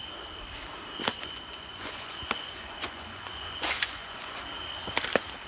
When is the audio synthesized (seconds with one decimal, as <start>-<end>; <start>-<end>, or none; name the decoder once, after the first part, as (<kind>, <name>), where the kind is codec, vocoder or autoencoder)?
1.1-4.4 (vocoder, Vocos)